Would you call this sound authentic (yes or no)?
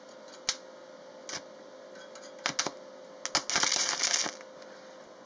yes